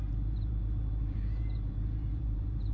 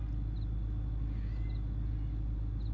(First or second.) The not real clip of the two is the first